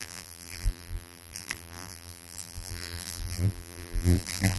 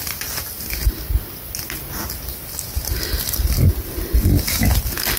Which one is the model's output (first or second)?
first